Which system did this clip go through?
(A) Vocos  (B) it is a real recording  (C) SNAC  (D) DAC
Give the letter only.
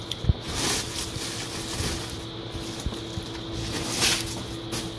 B